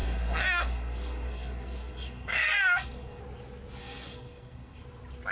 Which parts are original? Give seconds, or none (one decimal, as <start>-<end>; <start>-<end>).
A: 3.2-3.8; 4.8-5.3